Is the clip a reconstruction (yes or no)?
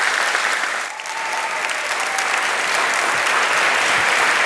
no